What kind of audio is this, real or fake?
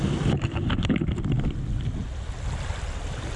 real